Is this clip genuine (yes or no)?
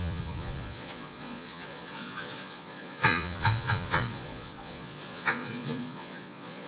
no